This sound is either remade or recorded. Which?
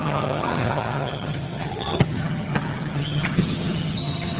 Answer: remade